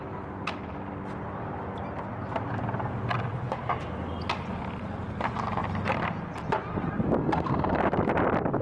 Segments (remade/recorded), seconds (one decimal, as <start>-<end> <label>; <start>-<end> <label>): 0.0-7.2 recorded; 7.2-7.8 remade; 7.8-8.6 recorded